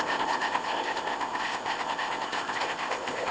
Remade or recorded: remade